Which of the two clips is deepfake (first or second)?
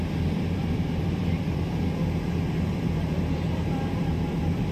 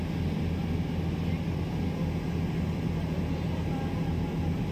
first